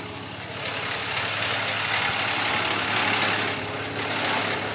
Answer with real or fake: real